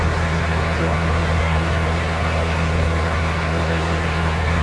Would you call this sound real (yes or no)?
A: no